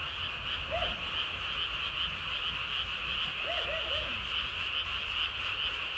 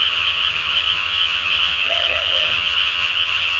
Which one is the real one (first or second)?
first